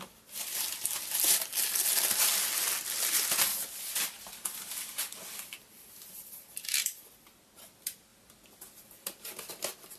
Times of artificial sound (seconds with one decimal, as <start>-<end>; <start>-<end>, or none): none